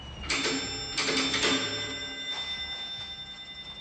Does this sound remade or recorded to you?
recorded